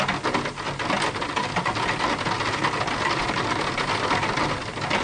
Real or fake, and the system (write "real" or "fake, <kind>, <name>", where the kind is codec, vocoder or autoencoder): real